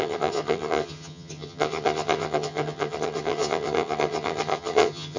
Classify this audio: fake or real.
fake